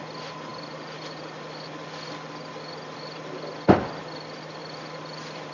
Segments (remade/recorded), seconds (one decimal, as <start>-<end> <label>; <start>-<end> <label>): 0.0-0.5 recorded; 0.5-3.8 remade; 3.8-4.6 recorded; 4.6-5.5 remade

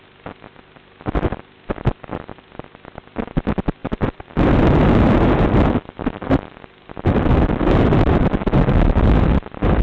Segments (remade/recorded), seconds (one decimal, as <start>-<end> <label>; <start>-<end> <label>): 0.0-3.8 recorded; 3.8-8.3 remade; 8.3-9.8 recorded

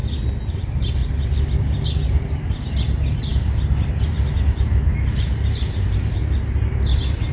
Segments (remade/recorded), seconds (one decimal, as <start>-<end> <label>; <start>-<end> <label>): 0.0-0.5 recorded; 0.5-1.0 remade; 1.0-2.1 recorded; 2.1-6.2 remade; 6.2-7.3 recorded

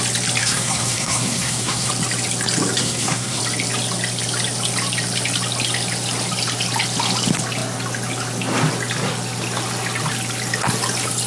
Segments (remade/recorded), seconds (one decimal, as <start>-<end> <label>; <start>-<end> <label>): 0.0-0.4 recorded; 0.4-1.9 remade; 1.9-2.8 recorded; 2.8-3.4 remade; 3.4-11.3 recorded

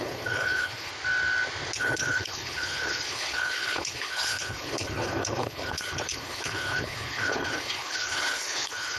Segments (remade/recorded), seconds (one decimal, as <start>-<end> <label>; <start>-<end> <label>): 0.0-0.9 remade; 0.9-1.8 recorded; 1.8-9.0 remade

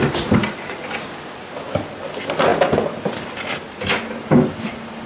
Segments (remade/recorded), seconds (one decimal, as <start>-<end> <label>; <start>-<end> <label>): 0.0-5.1 recorded

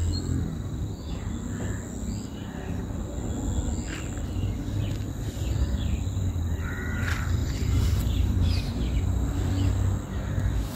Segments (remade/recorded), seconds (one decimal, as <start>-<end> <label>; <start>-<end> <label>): 0.0-7.4 recorded; 7.4-8.5 remade; 8.5-10.8 recorded